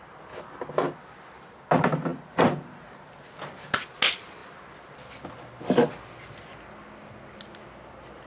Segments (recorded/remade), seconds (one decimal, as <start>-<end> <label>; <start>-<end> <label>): 0.0-8.3 recorded